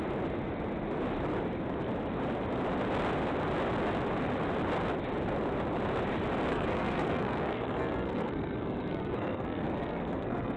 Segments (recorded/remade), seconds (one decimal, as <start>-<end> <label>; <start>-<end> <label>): 0.0-6.5 recorded; 6.5-10.6 remade